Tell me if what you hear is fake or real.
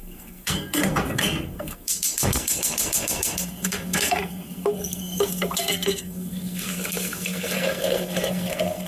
fake